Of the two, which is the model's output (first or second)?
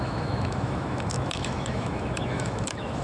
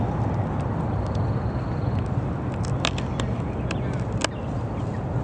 first